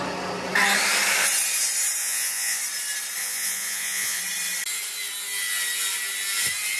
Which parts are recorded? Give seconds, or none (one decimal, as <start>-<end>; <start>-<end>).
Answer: 0.0-2.0; 2.6-3.2; 4.2-6.8